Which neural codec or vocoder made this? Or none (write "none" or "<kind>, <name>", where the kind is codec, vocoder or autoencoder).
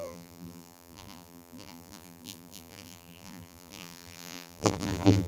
vocoder, BigVGAN v2